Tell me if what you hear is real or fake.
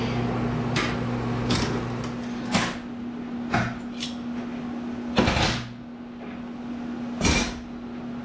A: real